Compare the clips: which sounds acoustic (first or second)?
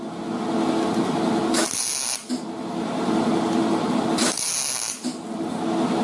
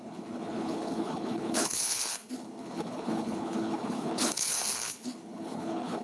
first